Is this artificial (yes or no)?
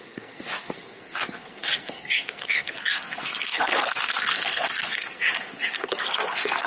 yes